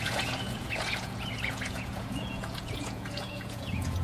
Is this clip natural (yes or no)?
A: no